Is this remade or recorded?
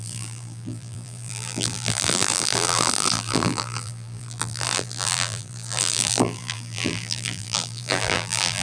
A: remade